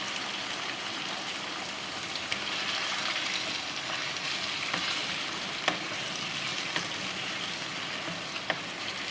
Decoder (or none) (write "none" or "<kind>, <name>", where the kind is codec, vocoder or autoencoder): none